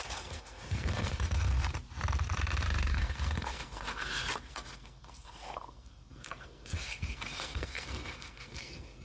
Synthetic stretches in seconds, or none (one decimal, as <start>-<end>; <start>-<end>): 0.0-1.7; 2.9-9.0